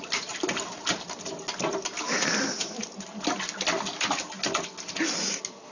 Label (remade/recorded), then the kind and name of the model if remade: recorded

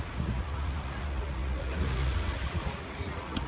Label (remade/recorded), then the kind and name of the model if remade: remade, vocoder, Vocos